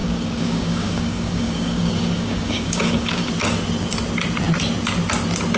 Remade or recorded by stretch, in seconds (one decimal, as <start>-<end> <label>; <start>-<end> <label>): 0.0-3.3 remade; 3.3-5.6 recorded